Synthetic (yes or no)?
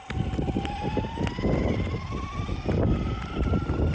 no